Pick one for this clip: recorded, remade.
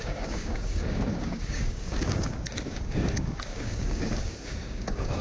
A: remade